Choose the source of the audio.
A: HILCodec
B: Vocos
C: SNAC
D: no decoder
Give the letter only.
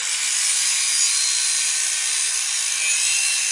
D